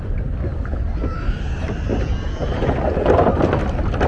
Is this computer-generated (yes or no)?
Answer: no